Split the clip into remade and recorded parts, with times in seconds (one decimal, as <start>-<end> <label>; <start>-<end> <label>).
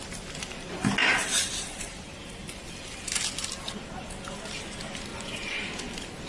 0.0-5.1 recorded; 5.1-5.7 remade; 5.7-6.3 recorded